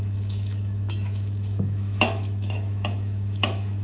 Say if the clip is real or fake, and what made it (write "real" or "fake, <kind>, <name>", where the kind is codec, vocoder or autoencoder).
fake, autoencoder, DAC-VAE